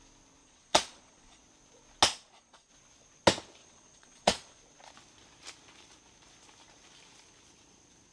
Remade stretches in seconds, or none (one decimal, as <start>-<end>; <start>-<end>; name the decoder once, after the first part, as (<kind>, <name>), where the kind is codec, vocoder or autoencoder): 0.4-1.4 (vocoder, Vocos); 2.1-2.7; 3.6-4.6